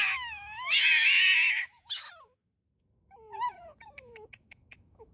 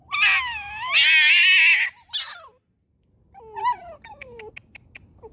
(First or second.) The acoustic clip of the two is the second